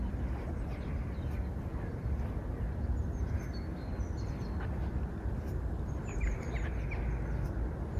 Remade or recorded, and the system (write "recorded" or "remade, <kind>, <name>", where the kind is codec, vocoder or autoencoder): recorded